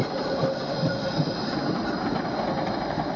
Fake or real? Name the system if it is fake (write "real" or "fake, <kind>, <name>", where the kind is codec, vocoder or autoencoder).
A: real